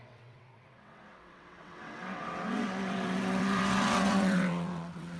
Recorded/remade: remade